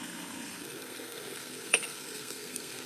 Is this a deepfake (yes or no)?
yes